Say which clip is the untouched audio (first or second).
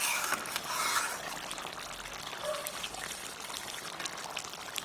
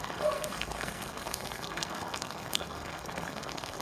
first